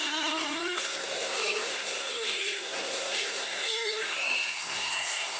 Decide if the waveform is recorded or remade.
remade